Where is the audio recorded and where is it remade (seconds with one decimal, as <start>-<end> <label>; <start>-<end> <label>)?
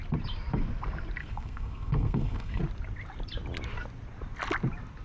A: 0.0-1.2 recorded; 1.2-2.6 remade; 2.6-5.0 recorded